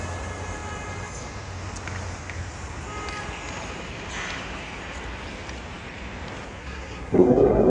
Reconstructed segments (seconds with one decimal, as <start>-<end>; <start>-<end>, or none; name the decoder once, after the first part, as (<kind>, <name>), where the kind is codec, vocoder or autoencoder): 6.6-7.7 (codec, SNAC)